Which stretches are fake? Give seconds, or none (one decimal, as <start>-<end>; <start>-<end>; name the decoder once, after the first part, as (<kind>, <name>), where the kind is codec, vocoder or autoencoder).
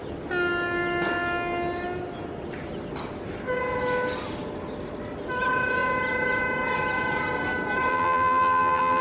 7.9-9.0 (vocoder, BigVGAN v2)